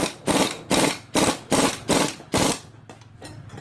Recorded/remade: recorded